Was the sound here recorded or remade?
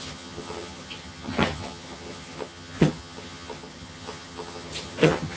remade